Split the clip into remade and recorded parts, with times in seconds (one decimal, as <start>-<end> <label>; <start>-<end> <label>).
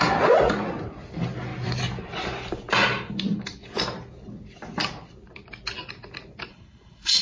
0.0-6.5 recorded; 6.5-7.2 remade